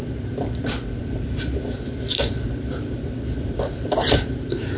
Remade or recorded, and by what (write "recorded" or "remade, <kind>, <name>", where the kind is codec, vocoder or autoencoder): remade, vocoder, BigVGAN v2